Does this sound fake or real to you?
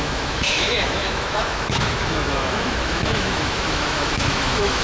fake